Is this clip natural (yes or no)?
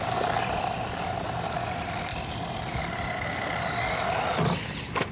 yes